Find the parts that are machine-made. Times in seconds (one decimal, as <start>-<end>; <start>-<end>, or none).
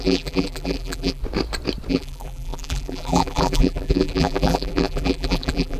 0.0-1.2; 1.9-5.8